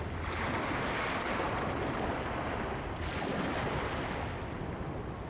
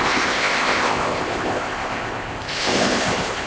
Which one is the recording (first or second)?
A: first